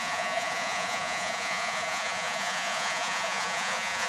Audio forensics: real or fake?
fake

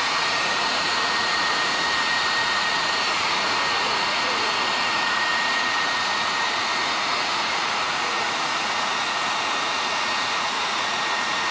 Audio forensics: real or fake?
fake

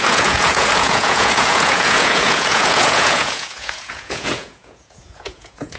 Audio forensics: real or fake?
fake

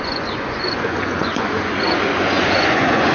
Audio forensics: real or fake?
fake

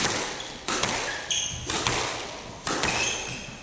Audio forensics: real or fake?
real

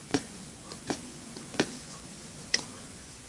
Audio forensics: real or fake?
fake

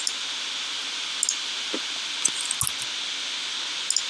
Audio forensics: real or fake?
real